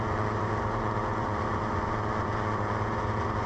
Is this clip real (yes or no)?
no